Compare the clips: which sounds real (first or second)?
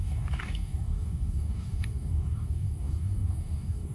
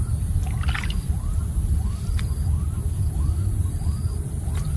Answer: second